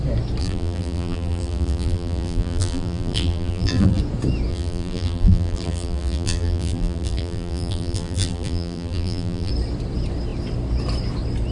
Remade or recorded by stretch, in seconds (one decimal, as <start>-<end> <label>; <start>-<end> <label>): 0.0-0.4 recorded; 0.4-4.0 remade; 4.0-4.5 recorded; 4.5-9.5 remade; 9.5-11.5 recorded